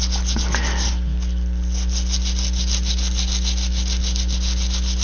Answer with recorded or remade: recorded